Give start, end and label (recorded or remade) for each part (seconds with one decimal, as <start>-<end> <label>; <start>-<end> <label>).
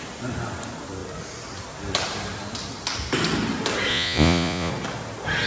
0.0-3.9 recorded; 3.9-4.7 remade; 4.7-5.5 recorded